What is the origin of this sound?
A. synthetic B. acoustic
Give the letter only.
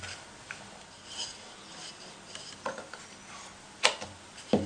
B